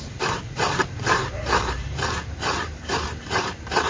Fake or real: fake